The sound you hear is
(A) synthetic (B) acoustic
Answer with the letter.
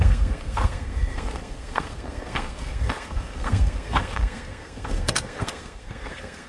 A